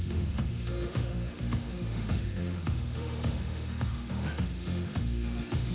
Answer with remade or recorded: remade